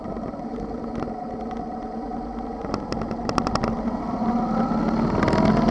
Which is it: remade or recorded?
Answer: recorded